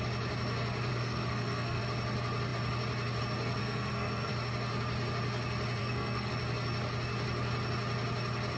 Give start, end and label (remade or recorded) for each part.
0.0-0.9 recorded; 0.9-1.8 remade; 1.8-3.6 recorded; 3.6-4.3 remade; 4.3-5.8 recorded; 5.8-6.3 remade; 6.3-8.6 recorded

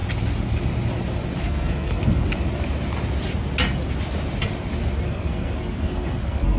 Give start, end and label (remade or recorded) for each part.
0.0-1.4 recorded; 1.4-2.2 remade; 2.2-5.0 recorded; 5.0-6.6 remade

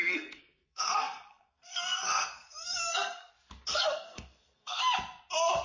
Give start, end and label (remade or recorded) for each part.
0.0-3.3 remade; 3.3-3.7 recorded; 3.7-4.8 remade; 4.8-5.6 recorded

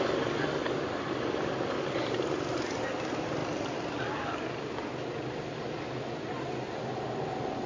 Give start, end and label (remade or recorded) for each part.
0.0-7.7 recorded

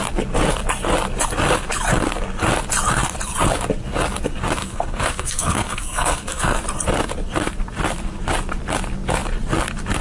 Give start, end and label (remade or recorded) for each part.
0.0-4.6 recorded; 4.6-6.6 remade; 6.6-10.0 recorded

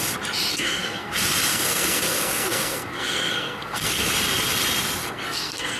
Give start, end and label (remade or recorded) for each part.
0.0-0.5 recorded; 0.5-1.1 remade; 1.1-1.5 recorded; 1.5-4.1 remade; 4.1-5.0 recorded; 5.0-5.8 remade

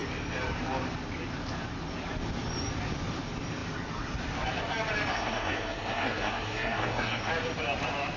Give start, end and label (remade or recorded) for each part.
0.0-5.1 recorded; 5.1-7.3 remade; 7.3-8.2 recorded

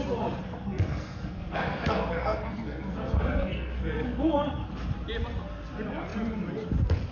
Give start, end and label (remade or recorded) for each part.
0.0-0.4 recorded; 0.4-4.7 remade; 4.7-7.1 recorded